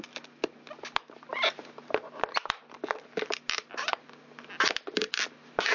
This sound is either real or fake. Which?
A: real